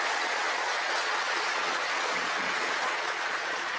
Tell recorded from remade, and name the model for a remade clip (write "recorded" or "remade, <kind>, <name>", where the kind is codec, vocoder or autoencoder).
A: remade, vocoder, Vocos